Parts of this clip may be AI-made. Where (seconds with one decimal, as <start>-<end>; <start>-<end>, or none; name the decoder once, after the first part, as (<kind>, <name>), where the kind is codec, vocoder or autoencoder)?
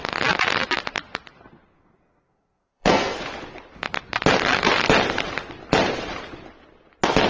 1.7-3.2 (codec, SNAC)